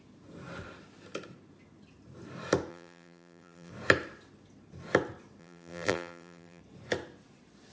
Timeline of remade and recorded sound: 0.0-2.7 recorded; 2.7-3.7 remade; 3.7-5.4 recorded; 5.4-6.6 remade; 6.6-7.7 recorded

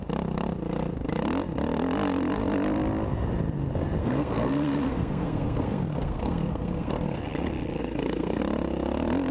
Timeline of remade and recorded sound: 0.0-4.0 recorded; 4.0-7.2 remade; 7.2-7.8 recorded; 7.8-8.4 remade; 8.4-9.3 recorded

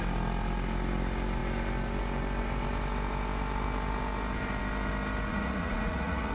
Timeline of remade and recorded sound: 0.0-5.3 recorded; 5.3-6.3 remade

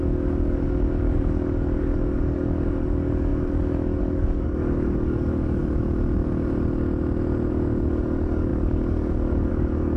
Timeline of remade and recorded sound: 0.0-5.6 remade; 5.6-7.5 recorded; 7.5-10.0 remade

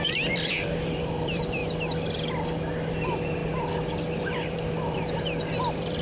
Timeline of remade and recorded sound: 0.0-1.6 remade; 1.6-2.9 recorded; 2.9-3.4 remade; 3.4-4.2 recorded; 4.2-6.0 remade

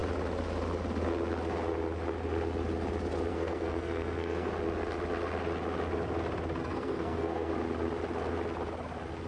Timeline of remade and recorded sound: 0.0-3.3 recorded; 3.3-4.5 remade; 4.5-6.6 recorded; 6.6-7.5 remade; 7.5-9.3 recorded